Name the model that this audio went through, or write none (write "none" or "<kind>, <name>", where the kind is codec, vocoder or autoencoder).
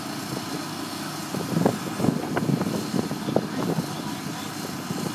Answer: none